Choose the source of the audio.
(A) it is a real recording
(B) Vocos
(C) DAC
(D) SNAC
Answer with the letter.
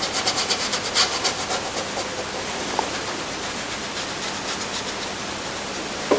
A